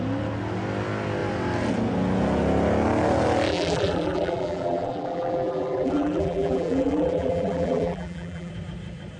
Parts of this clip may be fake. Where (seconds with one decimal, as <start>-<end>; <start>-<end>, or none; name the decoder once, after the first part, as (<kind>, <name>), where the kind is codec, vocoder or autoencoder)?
3.5-8.5 (vocoder, BigVGAN v2)